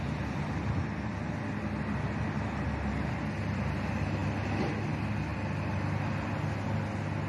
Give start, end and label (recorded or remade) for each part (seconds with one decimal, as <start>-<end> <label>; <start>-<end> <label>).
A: 0.0-7.3 recorded